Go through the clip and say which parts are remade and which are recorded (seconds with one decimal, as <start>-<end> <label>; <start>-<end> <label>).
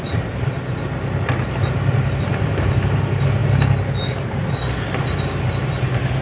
0.0-6.2 recorded